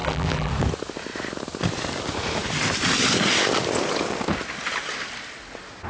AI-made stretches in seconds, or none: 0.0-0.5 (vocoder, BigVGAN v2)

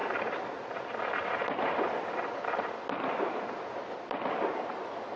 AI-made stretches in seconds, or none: 0.0-0.7 (vocoder, BigVGAN v2)

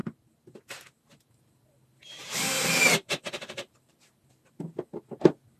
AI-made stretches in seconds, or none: 2.2-4.2 (vocoder, BigVGAN v2)